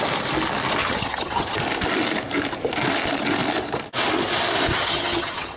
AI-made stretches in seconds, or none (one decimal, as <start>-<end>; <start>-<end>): 0.8-1.6; 4.7-5.6